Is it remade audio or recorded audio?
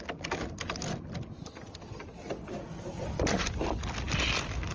recorded